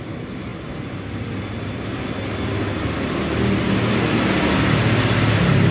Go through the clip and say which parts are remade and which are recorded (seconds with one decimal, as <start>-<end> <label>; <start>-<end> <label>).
0.0-5.7 recorded